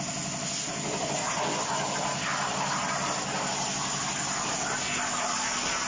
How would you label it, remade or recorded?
recorded